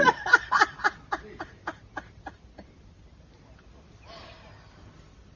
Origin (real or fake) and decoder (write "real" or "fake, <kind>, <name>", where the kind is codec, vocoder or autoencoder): real